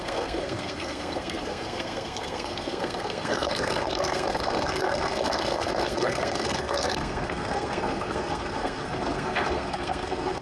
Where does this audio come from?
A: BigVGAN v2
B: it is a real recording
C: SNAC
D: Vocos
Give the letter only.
C